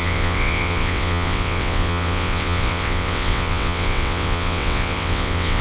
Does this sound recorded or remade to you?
remade